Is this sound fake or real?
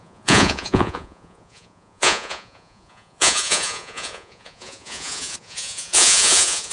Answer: fake